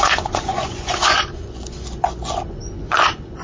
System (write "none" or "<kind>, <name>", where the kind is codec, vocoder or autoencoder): vocoder, Vocos